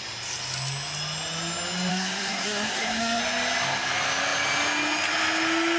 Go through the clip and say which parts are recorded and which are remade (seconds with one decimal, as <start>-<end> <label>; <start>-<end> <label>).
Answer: 0.0-1.9 recorded; 1.9-3.2 remade; 3.2-5.8 recorded